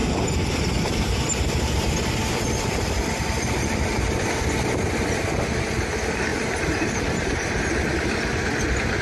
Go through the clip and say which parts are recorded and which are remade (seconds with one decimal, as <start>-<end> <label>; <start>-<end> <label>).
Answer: 0.0-2.2 remade; 2.2-6.3 recorded; 6.3-7.5 remade; 7.5-9.0 recorded